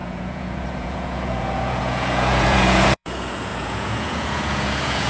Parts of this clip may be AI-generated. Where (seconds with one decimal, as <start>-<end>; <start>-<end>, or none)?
0.0-5.1